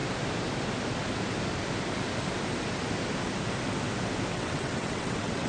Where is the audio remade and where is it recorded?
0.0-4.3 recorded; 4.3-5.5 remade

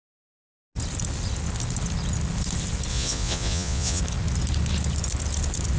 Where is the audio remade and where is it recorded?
0.0-2.9 recorded; 2.9-4.0 remade; 4.0-5.8 recorded

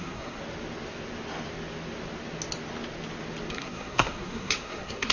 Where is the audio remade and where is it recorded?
0.0-0.4 remade; 0.4-3.5 recorded; 3.5-5.1 remade

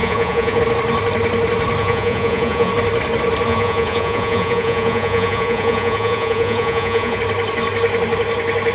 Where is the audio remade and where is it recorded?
0.0-0.6 remade; 0.6-1.8 recorded; 1.8-2.7 remade; 2.7-3.5 recorded; 3.5-7.2 remade; 7.2-8.7 recorded

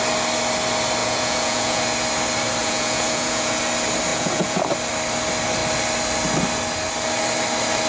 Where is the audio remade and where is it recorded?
0.0-1.0 recorded; 1.0-1.8 remade; 1.8-2.6 recorded; 2.6-3.6 remade; 3.6-4.1 recorded; 4.1-4.6 remade; 4.6-7.9 recorded

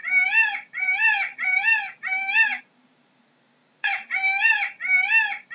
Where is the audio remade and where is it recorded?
0.0-5.5 remade

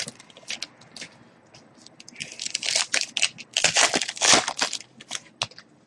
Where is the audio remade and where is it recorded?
0.0-5.9 recorded